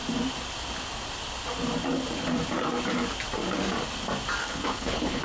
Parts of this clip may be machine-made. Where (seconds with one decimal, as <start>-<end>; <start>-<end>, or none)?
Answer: 4.4-5.2